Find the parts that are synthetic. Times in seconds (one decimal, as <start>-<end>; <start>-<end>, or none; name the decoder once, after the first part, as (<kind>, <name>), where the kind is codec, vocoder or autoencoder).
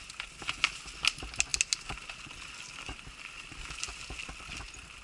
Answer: none